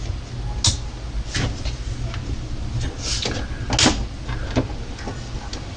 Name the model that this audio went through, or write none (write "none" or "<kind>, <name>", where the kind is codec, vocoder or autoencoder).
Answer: none